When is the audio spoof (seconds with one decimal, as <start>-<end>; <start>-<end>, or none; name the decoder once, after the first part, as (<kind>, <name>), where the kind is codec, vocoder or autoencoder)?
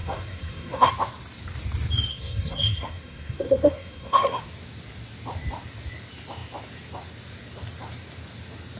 0.0-0.9 (codec, SNAC); 2.1-4.4